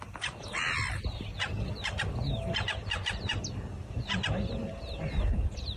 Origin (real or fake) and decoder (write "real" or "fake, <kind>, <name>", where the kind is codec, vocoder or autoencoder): real